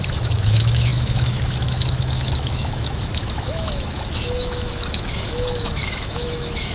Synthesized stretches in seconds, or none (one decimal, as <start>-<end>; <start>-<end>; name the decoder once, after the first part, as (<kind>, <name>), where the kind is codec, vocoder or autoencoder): 0.0-6.7 (autoencoder, DAC-VAE)

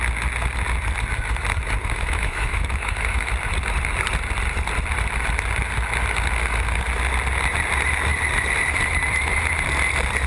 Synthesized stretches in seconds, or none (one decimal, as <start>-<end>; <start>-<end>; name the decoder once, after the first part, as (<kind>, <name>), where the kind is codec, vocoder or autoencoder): 1.8-3.3 (autoencoder, DAC-VAE)

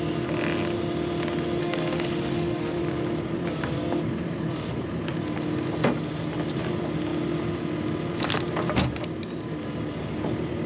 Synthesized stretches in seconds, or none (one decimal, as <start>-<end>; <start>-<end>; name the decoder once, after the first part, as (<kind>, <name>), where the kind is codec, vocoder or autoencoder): 1.6-2.8 (autoencoder, DAC-VAE)

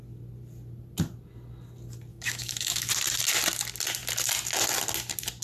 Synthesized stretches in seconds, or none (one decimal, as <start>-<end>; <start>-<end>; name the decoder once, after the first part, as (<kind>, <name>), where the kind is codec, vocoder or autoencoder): 2.1-2.9 (autoencoder, DAC-VAE)